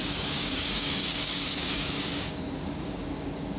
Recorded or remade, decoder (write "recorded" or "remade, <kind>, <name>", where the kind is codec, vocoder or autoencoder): remade, codec, DAC